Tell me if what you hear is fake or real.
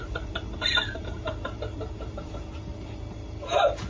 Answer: real